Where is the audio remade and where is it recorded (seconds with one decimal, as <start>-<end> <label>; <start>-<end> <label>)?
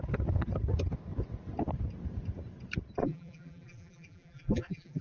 0.0-3.0 recorded; 3.0-5.0 remade